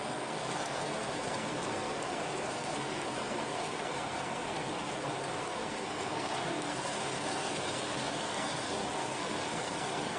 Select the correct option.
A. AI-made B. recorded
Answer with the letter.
A